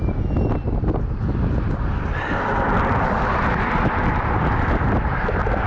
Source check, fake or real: real